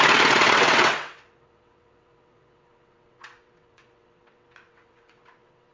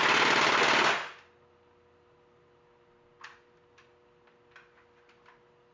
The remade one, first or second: first